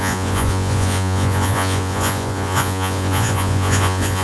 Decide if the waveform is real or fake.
fake